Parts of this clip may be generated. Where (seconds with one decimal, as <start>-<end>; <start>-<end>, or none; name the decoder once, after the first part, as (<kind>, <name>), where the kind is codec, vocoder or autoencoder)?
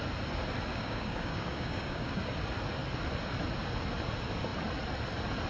0.7-2.1 (codec, DAC)